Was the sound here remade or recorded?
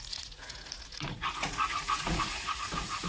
remade